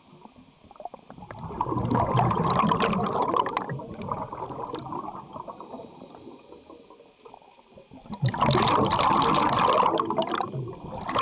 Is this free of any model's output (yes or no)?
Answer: yes